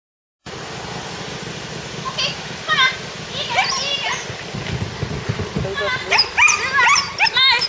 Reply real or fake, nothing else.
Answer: real